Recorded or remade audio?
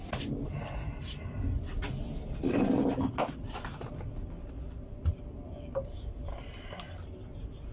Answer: recorded